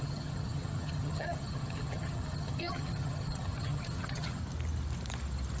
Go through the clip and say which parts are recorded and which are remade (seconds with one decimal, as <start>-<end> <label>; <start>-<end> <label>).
0.0-4.4 remade; 4.4-5.6 recorded